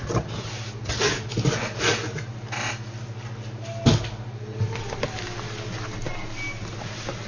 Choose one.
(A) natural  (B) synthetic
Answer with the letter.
A